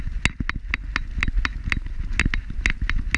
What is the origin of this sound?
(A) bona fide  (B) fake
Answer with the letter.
A